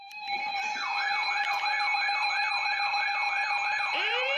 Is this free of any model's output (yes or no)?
no